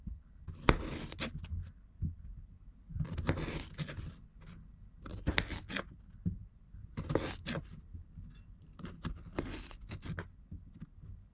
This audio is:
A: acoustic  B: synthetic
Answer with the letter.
A